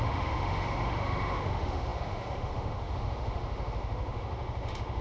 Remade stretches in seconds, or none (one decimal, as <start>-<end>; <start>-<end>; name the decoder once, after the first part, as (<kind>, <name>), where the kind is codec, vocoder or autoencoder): 0.0-5.0 (autoencoder, DAC-VAE)